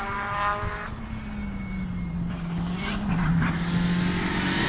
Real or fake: real